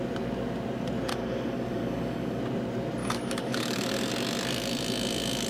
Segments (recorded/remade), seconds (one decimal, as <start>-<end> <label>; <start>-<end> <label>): 0.0-1.1 recorded; 1.1-2.4 remade; 2.4-3.0 recorded; 3.0-4.1 remade; 4.1-5.5 recorded